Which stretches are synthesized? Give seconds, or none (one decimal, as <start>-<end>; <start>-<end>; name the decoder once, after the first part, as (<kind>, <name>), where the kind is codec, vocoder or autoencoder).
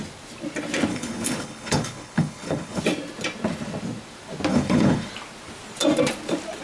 0.9-2.8 (codec, HILCodec); 4.5-5.1